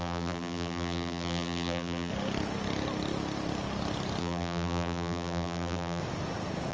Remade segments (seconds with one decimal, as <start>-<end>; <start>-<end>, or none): 0.0-2.1; 4.2-6.0